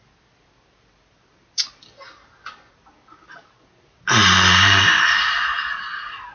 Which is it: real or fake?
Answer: real